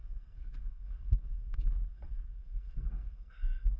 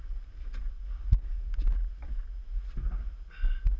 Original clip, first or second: second